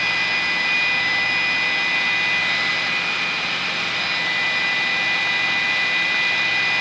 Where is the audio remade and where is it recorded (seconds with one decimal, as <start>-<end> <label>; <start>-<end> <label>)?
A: 0.0-6.8 recorded